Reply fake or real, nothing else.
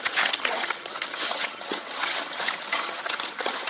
fake